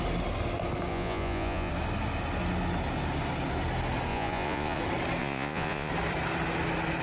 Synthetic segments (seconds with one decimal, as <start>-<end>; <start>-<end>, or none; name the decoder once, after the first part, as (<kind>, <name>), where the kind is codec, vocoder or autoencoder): 0.9-1.7 (vocoder, Vocos); 4.1-4.8; 5.2-5.9